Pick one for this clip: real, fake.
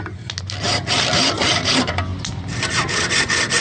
real